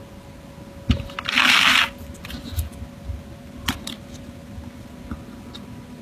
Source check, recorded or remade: recorded